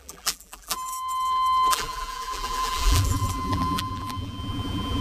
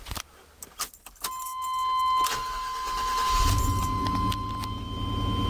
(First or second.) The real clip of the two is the second